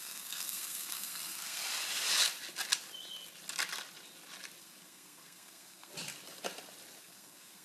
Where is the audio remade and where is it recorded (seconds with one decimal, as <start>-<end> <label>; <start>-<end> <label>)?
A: 0.0-1.6 remade; 1.6-4.6 recorded; 4.6-5.9 remade; 5.9-7.0 recorded; 7.0-7.6 remade